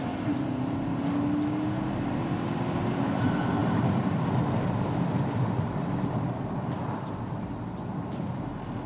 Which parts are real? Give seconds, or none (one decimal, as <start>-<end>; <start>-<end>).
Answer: 0.0-8.9